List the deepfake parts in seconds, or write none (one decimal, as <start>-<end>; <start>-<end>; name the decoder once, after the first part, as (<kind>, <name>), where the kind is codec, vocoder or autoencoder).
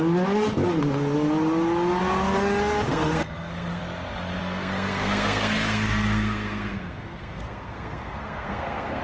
2.9-3.8 (codec, SNAC); 4.4-9.0